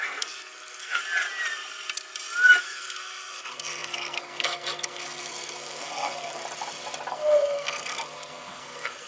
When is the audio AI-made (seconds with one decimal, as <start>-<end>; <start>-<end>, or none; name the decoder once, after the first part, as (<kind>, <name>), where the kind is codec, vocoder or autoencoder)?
0.0-1.0 (codec, SNAC); 2.6-6.4; 7.1-9.1